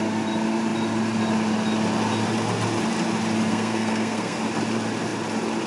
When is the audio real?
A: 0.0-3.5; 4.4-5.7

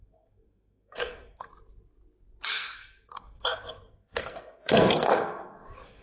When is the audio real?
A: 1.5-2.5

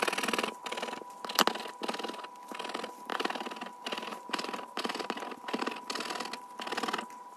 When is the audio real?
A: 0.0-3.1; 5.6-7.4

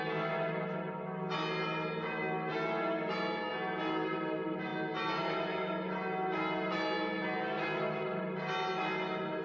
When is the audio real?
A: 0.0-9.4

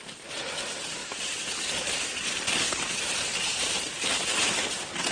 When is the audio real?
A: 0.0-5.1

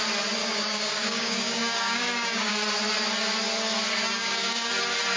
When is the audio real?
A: 0.0-0.4; 2.5-4.0; 4.7-5.2